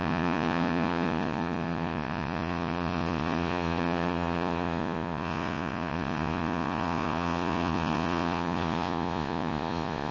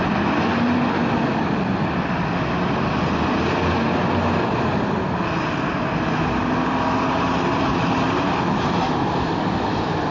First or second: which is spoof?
first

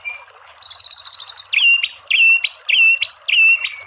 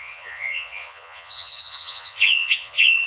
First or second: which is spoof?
second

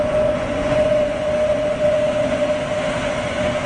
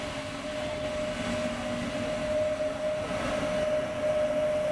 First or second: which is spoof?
first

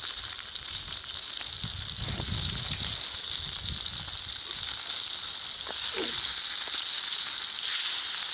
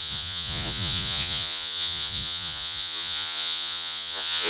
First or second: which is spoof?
second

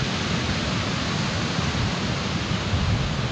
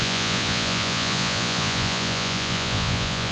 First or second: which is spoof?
second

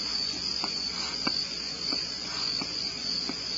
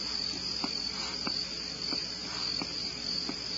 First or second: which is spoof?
first